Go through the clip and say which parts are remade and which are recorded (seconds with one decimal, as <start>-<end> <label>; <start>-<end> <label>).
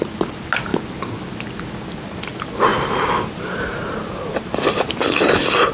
0.0-2.7 recorded; 2.7-5.3 remade; 5.3-5.7 recorded